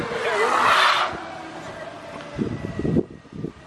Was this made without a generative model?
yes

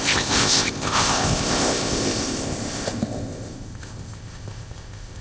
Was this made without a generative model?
no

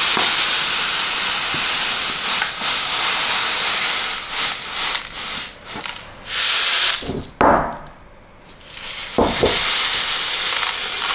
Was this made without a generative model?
yes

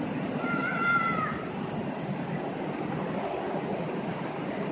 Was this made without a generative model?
yes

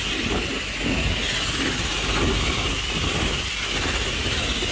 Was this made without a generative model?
yes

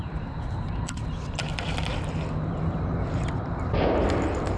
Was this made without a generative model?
yes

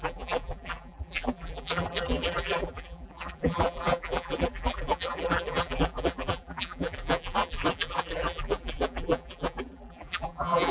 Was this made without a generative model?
no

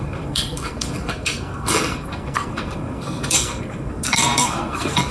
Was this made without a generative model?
no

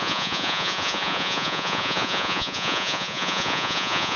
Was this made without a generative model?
no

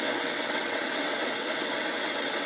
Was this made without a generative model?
no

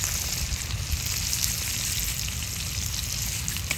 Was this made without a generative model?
yes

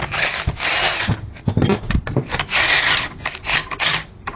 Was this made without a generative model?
yes